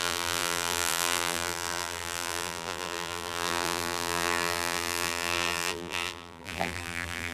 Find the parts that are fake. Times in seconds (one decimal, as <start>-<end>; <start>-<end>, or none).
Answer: 0.0-7.3